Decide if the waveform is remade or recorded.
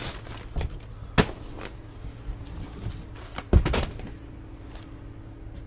recorded